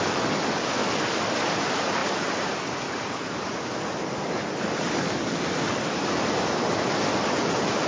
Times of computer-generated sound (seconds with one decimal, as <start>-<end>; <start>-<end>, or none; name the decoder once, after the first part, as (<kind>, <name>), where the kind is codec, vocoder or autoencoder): 0.0-0.8 (vocoder, BigVGAN v2); 1.6-7.1